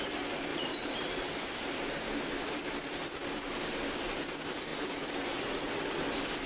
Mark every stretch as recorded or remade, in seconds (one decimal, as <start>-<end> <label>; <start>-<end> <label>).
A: 0.0-0.5 recorded; 0.5-1.6 remade; 1.6-6.5 recorded